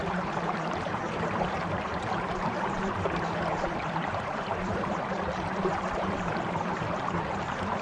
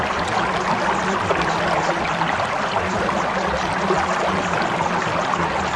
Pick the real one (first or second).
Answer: second